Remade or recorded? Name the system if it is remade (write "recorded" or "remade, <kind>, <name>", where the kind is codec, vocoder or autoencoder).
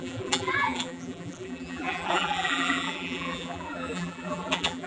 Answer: remade, vocoder, BigVGAN v2